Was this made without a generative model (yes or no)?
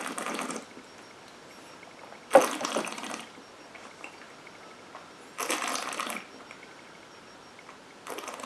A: yes